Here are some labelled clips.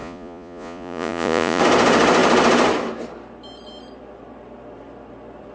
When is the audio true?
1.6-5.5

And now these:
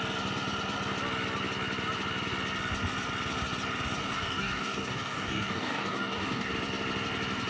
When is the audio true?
0.0-4.0; 6.5-7.5

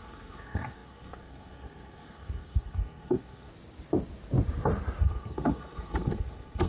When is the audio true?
3.5-5.0

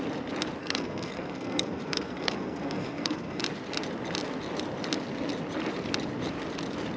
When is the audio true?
0.0-0.6; 3.4-7.0

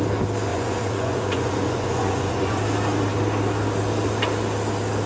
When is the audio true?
0.0-0.5; 2.6-5.1

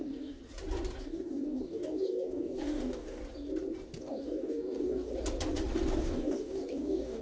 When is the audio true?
0.4-1.0; 3.2-4.0; 5.1-6.0

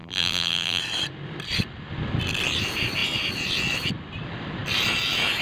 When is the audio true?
0.8-5.4

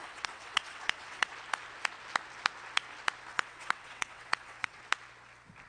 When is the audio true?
1.3-3.3; 4.8-5.7